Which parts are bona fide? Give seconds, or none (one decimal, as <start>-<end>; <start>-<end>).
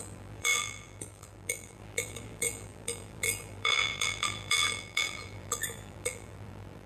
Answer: none